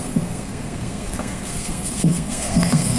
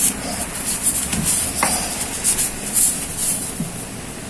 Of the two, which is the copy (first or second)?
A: first